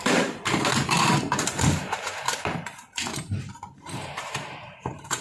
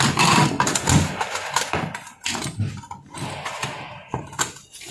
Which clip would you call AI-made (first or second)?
first